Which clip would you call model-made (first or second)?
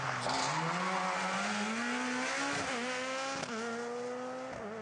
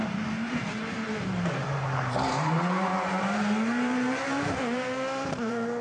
second